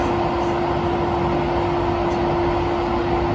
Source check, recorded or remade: recorded